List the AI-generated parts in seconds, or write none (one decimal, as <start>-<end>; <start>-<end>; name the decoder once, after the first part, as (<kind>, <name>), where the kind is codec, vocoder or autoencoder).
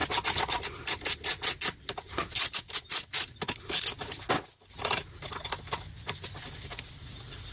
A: none